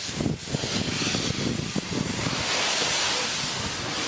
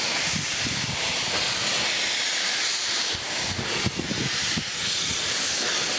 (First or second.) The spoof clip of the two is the second